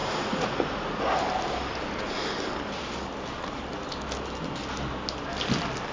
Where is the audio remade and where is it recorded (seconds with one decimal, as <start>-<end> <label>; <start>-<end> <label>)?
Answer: 0.0-1.0 remade; 1.0-5.9 recorded